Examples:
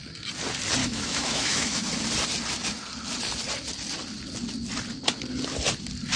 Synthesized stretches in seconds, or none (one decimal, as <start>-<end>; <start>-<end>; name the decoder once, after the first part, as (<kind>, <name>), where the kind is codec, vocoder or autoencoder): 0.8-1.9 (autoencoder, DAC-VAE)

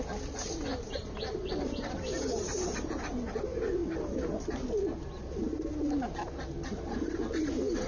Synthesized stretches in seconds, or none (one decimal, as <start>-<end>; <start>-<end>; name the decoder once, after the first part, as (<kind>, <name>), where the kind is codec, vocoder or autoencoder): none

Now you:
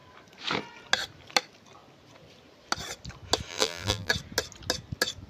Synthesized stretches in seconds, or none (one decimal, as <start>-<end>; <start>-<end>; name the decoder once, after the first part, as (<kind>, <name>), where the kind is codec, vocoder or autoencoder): 3.5-4.1 (vocoder, BigVGAN v2)

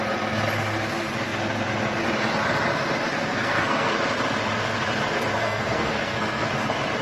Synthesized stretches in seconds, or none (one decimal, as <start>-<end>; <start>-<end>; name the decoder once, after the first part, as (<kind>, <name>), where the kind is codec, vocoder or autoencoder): 3.1-3.9 (codec, SNAC); 5.4-6.5

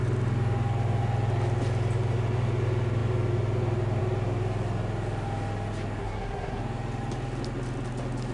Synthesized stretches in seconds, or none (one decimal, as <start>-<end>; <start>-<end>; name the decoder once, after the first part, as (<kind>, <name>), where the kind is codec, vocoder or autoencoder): 6.0-6.6 (codec, SNAC)

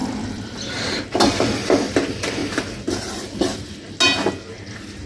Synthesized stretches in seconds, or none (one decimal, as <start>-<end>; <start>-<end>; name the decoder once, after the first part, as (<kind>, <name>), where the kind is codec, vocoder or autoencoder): 0.0-0.7 (vocoder, BigVGAN v2)

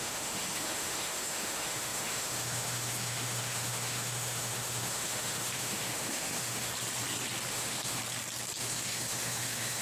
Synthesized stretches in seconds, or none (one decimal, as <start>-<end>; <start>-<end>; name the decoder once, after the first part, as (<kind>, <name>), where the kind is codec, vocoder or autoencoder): 0.0-6.7 (autoencoder, DAC-VAE); 7.5-8.0; 8.6-9.8

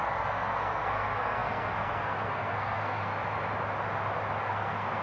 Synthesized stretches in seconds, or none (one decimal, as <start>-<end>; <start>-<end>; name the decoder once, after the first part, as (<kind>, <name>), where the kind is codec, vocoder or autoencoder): 0.0-3.1 (codec, SNAC); 4.4-5.0